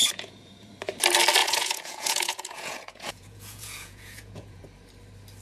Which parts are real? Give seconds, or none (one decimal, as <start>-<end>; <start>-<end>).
0.7-1.4; 4.6-5.4